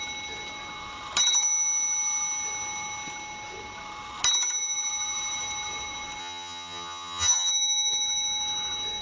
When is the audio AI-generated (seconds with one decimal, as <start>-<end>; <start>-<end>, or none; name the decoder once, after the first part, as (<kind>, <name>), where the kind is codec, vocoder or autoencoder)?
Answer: 6.2-7.5 (vocoder, HiFi-GAN)